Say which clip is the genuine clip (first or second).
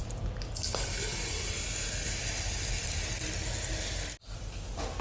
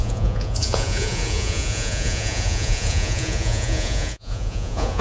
first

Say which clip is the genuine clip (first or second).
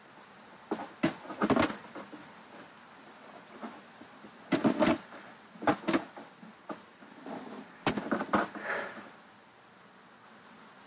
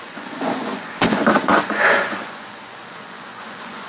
first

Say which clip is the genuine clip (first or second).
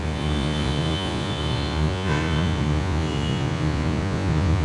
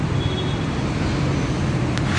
second